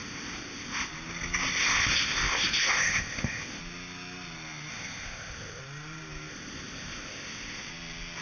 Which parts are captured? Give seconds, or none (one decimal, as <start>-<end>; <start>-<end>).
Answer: 0.9-1.6; 3.6-4.7; 5.6-6.3; 7.7-8.2